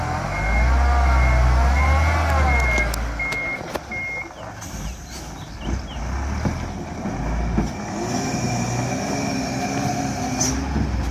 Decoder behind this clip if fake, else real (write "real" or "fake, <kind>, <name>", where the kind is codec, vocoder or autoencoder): real